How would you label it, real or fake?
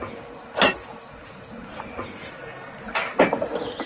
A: real